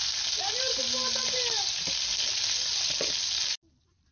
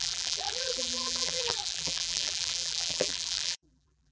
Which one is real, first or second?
first